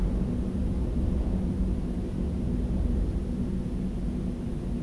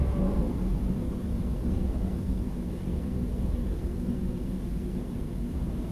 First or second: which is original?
first